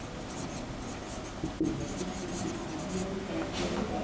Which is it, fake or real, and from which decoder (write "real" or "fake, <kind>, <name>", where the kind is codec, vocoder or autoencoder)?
real